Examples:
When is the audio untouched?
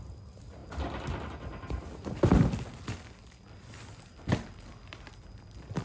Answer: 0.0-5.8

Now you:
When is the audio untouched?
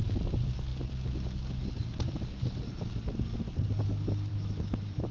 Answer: 0.0-4.3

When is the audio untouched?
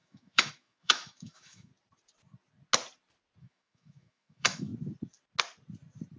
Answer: 1.7-3.4; 4.7-6.2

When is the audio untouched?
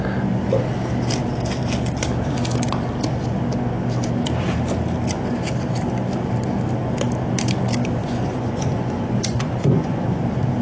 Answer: 0.0-8.0; 10.2-10.6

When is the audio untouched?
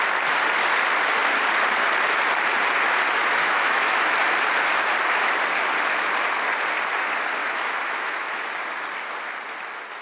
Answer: 0.0-3.4; 4.0-7.4; 8.6-10.0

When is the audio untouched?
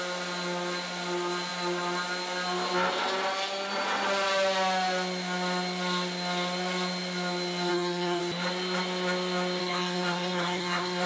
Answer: 0.0-7.7; 8.2-9.6